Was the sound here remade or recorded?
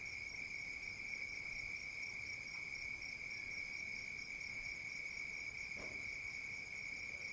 recorded